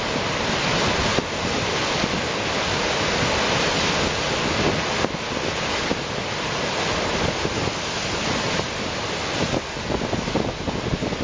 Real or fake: real